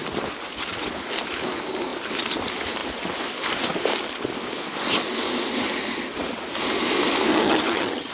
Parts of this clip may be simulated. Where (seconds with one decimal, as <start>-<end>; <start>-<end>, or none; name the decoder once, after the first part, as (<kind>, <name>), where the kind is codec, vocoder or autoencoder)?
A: 7.3-8.1 (vocoder, HiFi-GAN)